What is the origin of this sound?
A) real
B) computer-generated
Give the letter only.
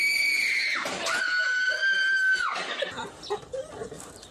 A